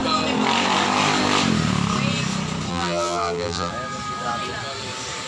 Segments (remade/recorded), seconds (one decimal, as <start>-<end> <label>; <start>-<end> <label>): 0.0-2.7 recorded; 2.7-3.7 remade; 3.7-5.3 recorded